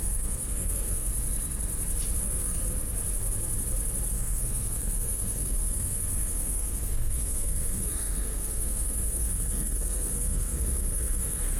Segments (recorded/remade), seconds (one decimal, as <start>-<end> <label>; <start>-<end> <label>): 0.0-1.1 remade; 1.1-2.2 recorded; 2.2-2.6 remade; 2.6-4.1 recorded; 4.1-11.6 remade